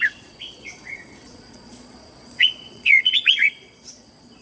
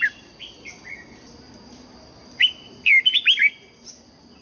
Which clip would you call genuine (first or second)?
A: second